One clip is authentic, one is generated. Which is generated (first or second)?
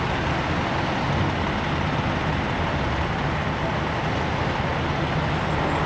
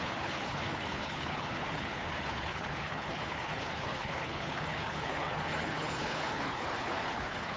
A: second